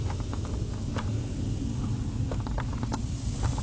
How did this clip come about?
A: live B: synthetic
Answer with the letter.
A